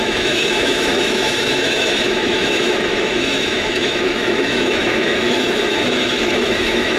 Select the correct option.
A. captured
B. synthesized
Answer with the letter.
B